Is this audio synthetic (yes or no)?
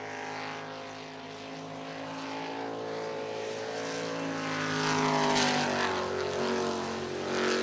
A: no